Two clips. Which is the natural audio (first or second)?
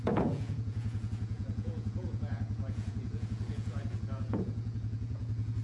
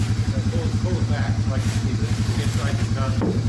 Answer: second